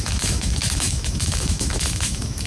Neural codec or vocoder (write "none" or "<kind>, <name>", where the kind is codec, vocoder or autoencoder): autoencoder, DAC-VAE